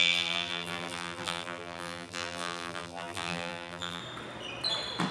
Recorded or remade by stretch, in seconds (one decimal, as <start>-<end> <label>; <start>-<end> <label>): 0.0-4.0 remade; 4.0-5.1 recorded